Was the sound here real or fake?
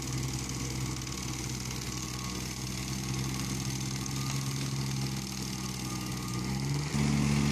real